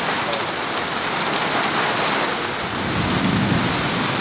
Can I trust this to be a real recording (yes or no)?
yes